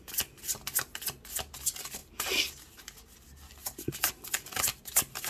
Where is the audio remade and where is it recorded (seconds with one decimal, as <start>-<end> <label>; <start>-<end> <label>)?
0.0-2.0 recorded; 2.0-2.8 remade; 2.8-3.6 recorded; 3.6-4.1 remade; 4.1-5.3 recorded